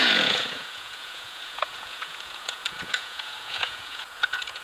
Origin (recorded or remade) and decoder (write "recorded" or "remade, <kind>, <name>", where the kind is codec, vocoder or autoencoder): remade, vocoder, Vocos